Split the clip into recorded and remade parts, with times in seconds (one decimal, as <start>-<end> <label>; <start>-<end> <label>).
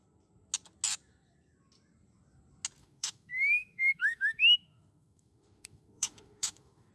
0.0-2.8 recorded; 2.8-6.9 remade